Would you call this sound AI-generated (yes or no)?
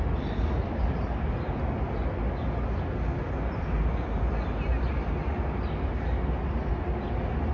no